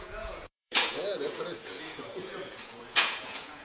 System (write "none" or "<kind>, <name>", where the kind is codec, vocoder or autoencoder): vocoder, Vocos